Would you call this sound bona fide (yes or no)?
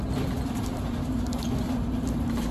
yes